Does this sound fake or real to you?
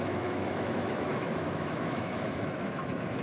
fake